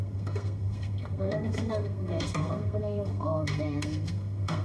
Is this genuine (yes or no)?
no